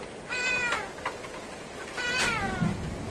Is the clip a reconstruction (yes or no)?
no